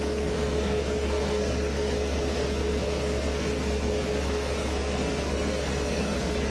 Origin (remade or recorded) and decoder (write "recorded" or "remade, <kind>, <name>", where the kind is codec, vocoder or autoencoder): remade, codec, SNAC